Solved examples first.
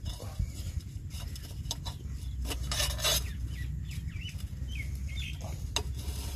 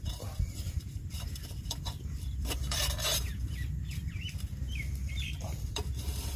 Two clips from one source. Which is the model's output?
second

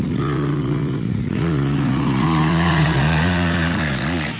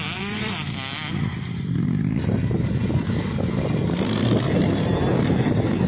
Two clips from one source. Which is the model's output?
first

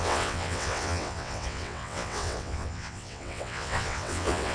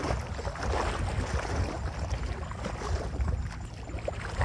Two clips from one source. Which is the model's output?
first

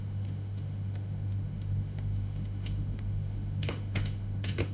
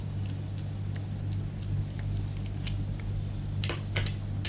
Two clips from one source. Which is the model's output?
first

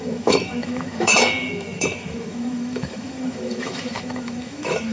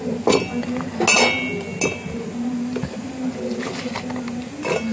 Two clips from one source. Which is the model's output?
first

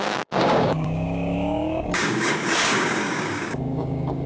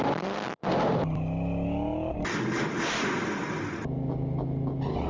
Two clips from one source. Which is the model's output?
first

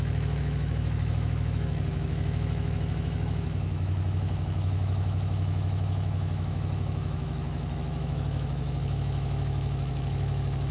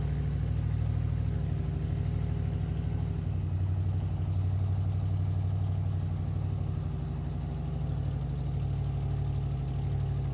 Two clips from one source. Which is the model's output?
first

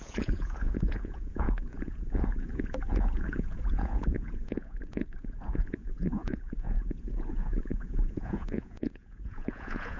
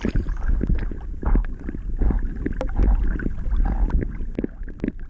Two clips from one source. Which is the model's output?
first